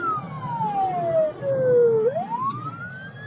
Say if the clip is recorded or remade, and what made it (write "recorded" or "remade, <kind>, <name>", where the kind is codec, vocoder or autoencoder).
recorded